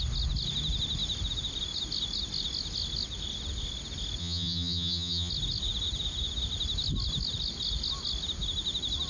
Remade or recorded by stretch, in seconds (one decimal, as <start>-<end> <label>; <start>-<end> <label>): 0.0-4.2 recorded; 4.2-5.3 remade; 5.3-9.1 recorded